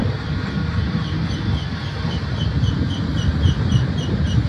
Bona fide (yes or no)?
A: no